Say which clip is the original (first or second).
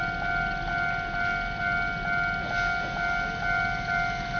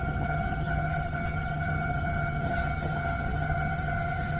first